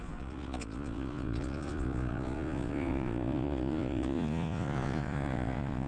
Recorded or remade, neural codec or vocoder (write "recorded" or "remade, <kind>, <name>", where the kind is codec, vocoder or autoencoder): remade, vocoder, Vocos